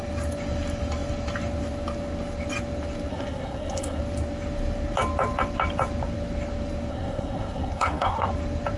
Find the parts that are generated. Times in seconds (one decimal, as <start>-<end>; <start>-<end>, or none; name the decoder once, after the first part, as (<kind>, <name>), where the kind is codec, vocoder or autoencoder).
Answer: 3.1-4.0 (codec, SNAC); 6.9-8.3